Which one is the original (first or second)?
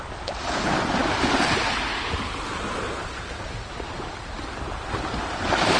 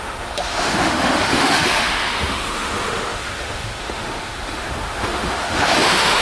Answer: first